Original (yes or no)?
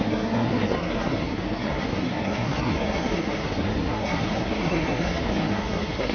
no